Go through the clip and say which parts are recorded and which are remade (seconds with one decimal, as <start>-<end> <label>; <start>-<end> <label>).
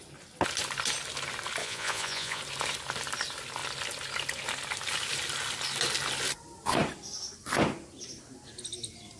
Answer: 0.0-1.6 recorded; 1.6-2.4 remade; 2.4-9.2 recorded